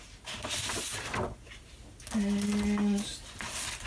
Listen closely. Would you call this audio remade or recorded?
recorded